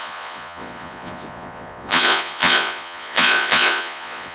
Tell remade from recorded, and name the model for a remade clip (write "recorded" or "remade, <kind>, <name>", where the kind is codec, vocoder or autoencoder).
remade, vocoder, Vocos